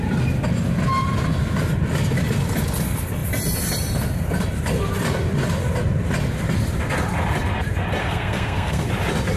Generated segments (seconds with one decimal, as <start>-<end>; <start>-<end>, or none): 8.0-8.9

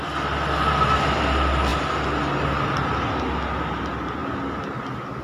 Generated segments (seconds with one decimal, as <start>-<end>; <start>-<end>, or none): none

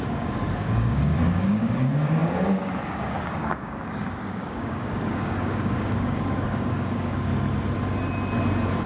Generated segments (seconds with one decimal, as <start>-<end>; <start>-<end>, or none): 0.0-7.3

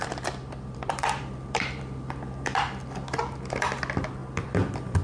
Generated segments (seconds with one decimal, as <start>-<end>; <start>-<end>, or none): 0.0-3.0; 4.2-5.0

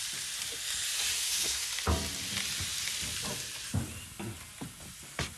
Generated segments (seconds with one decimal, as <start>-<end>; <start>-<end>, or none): 1.1-1.7

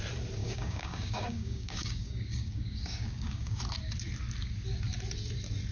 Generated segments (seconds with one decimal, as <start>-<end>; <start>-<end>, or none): 0.4-3.6

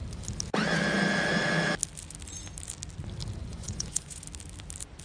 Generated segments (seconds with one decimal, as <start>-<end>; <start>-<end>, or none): 3.4-4.2